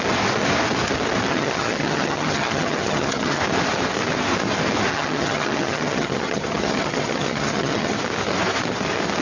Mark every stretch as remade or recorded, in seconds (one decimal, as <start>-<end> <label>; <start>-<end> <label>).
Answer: 0.0-1.3 recorded; 1.3-3.4 remade; 3.4-4.9 recorded; 4.9-8.0 remade; 8.0-9.2 recorded